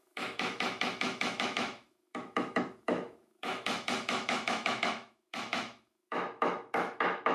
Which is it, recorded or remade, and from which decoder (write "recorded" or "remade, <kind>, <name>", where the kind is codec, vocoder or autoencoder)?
remade, autoencoder, DAC-VAE